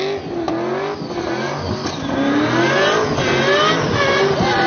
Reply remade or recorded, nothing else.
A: recorded